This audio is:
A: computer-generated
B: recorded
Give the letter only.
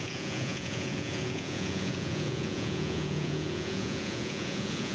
A